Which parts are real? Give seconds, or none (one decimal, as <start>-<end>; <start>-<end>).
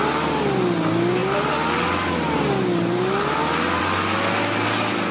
0.0-5.1